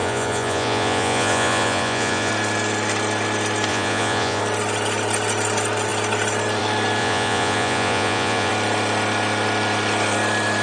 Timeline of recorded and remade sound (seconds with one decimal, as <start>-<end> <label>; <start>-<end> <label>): 0.0-2.3 remade; 2.3-3.7 recorded; 3.7-4.4 remade; 4.4-7.0 recorded; 7.0-8.5 remade; 8.5-10.6 recorded